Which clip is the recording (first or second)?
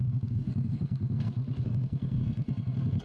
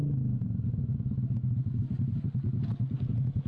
second